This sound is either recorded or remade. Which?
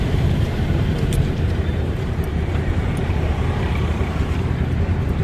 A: remade